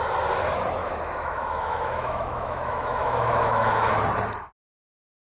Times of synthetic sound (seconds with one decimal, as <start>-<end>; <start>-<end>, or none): 0.8-3.9